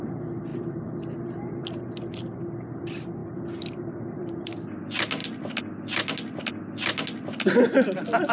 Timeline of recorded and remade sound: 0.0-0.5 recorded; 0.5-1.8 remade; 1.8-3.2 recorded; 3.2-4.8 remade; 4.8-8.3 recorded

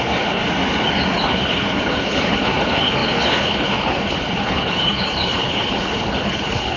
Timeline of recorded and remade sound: 0.0-0.4 remade; 0.4-0.9 recorded; 0.9-6.8 remade

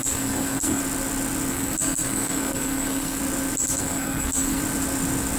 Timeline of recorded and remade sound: 0.0-0.8 remade; 0.8-1.5 recorded; 1.5-3.2 remade; 3.2-3.8 recorded; 3.8-4.6 remade; 4.6-5.4 recorded

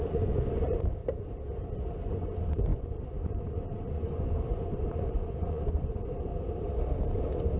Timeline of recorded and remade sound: 0.0-1.0 remade; 1.0-2.0 recorded; 2.0-6.3 remade; 6.3-7.6 recorded

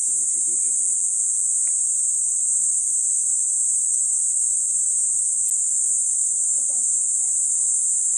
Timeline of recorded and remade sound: 0.0-0.8 recorded; 0.8-1.5 remade; 1.5-8.2 recorded